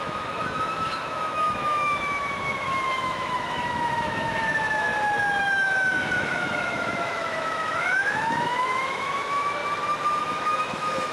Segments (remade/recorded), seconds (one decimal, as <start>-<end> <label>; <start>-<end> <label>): 0.0-4.9 remade; 4.9-5.4 recorded; 5.4-9.6 remade; 9.6-10.2 recorded; 10.2-11.1 remade